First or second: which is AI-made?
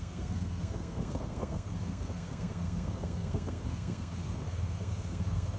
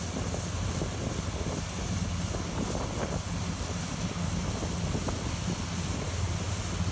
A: first